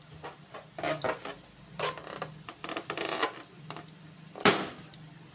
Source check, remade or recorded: remade